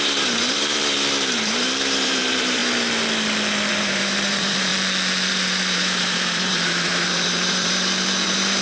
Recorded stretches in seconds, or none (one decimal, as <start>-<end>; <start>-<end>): 2.6-3.7; 4.7-5.3